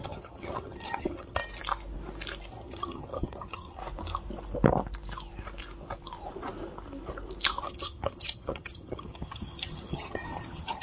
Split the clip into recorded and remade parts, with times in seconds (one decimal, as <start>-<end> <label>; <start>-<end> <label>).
0.0-1.4 remade; 1.4-2.5 recorded; 2.5-3.8 remade; 3.8-7.6 recorded; 7.6-10.8 remade